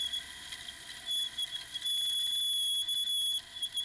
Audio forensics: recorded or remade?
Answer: recorded